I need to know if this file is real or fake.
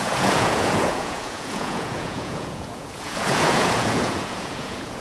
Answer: fake